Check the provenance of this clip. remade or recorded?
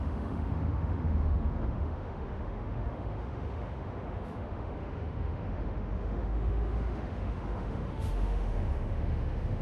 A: remade